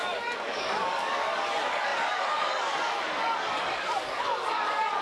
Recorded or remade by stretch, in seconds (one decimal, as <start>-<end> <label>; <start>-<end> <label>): 0.0-5.0 remade